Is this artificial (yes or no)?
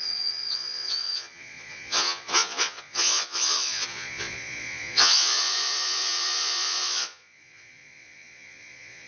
yes